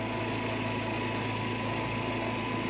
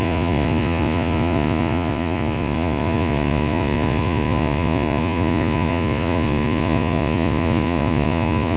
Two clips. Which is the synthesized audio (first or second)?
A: second